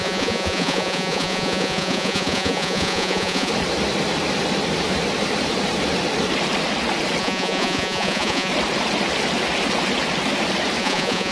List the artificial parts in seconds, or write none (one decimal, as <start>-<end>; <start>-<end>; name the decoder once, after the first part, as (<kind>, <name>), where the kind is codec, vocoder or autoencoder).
0.0-3.5 (vocoder, Vocos); 7.2-8.5; 10.8-11.3